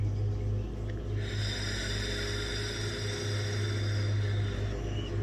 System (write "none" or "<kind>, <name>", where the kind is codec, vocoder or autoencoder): none